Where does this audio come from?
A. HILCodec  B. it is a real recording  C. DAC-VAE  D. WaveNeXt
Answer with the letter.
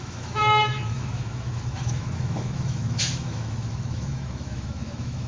C